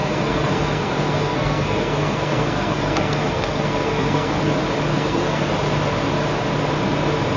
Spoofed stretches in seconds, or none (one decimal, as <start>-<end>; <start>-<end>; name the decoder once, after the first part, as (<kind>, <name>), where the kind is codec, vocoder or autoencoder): 0.0-4.4 (codec, SNAC); 4.9-5.5